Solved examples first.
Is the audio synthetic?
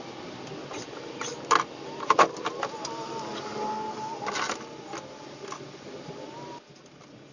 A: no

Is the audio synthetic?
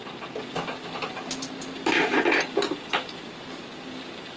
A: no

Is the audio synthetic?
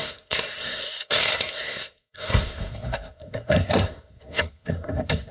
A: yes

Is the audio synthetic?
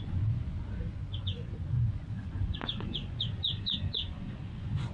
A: yes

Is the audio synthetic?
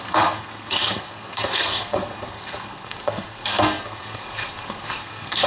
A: yes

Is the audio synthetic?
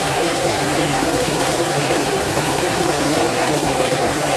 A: yes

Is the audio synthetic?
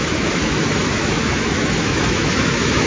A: yes